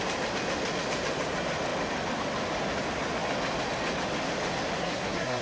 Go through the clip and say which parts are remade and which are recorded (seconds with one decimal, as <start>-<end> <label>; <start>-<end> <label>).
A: 0.0-4.8 recorded; 4.8-5.4 remade